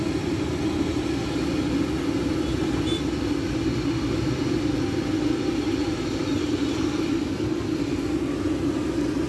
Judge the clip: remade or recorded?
recorded